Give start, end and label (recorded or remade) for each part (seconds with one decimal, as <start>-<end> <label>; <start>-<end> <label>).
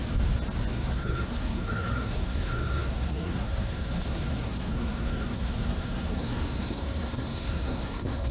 0.0-0.7 recorded; 0.7-8.3 remade